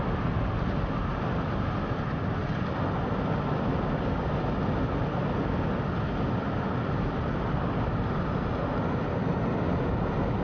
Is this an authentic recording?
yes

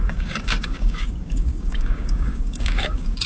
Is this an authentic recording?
no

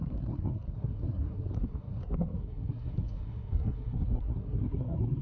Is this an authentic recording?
no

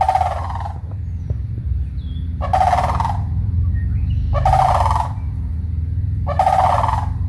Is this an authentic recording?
yes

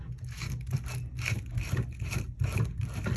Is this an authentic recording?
yes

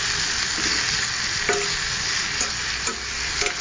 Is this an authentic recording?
yes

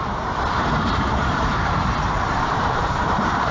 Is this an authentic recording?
no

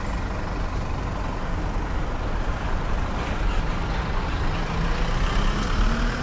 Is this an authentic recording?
yes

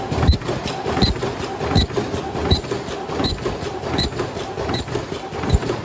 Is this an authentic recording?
yes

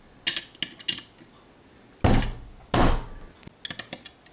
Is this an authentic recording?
yes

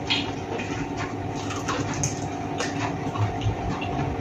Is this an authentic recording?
yes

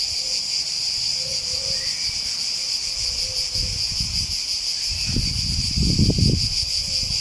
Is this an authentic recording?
yes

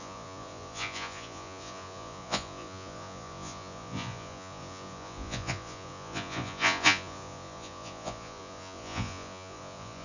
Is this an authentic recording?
no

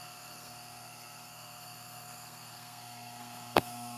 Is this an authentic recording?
no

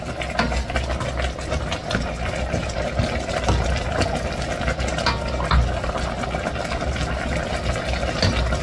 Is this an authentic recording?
yes